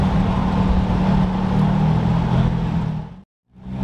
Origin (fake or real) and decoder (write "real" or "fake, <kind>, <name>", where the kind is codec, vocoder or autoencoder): real